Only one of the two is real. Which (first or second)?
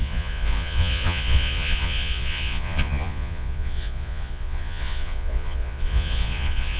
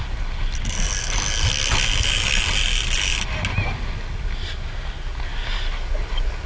second